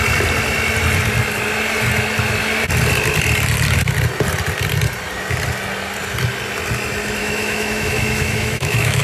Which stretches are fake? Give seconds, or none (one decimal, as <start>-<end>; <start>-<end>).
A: 7.2-9.0